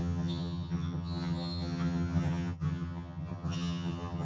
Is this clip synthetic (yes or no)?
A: yes